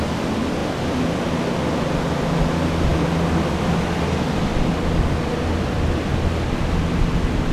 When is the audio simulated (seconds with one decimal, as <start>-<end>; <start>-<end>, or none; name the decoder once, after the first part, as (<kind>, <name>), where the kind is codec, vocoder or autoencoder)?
none